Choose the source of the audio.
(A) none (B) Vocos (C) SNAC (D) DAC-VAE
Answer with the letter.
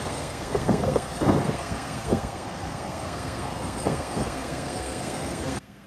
C